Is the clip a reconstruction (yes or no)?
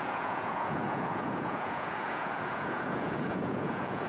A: yes